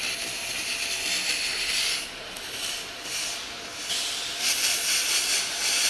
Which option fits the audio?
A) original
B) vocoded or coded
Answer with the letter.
A